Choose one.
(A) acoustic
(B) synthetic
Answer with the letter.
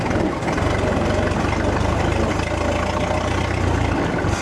A